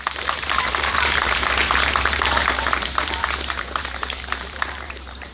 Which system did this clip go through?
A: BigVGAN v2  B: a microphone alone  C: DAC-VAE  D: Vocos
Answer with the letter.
A